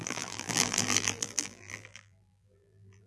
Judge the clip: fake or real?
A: fake